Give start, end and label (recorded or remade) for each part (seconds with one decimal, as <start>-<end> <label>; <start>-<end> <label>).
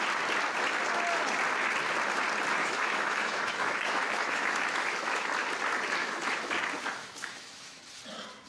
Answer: 0.0-2.6 recorded; 2.6-5.3 remade; 5.3-6.0 recorded; 6.0-6.6 remade; 6.6-7.0 recorded; 7.0-7.8 remade; 7.8-8.5 recorded